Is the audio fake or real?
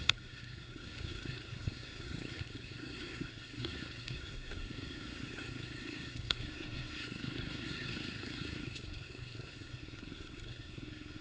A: fake